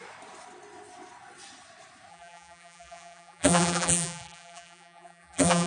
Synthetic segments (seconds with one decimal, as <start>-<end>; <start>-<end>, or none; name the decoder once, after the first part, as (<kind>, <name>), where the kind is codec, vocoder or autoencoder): 2.1-5.7 (vocoder, BigVGAN v2)